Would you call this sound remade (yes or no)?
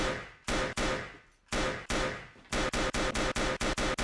no